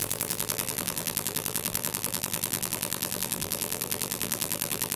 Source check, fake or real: fake